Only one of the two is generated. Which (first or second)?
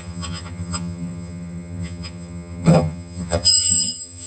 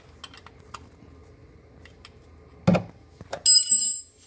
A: first